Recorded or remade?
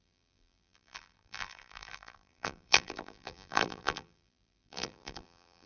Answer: remade